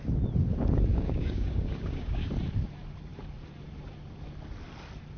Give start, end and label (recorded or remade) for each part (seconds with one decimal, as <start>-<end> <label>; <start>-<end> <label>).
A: 0.0-0.9 recorded; 0.9-2.3 remade; 2.3-5.2 recorded